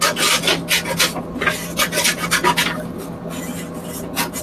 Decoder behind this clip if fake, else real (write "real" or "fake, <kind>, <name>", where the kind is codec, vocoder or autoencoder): real